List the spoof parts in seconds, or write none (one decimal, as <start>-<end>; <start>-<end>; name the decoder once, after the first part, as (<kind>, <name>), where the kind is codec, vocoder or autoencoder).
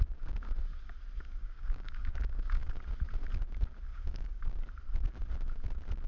1.4-2.8 (codec, DAC); 3.9-4.5